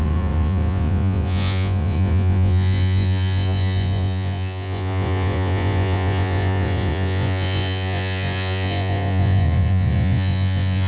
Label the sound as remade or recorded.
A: remade